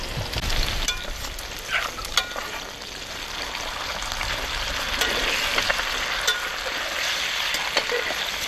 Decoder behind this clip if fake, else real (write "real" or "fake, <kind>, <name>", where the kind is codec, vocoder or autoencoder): real